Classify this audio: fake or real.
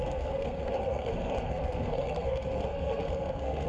fake